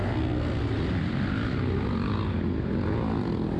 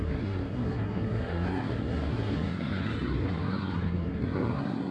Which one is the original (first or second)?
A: first